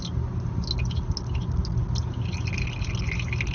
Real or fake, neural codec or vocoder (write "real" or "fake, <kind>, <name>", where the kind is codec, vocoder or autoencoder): real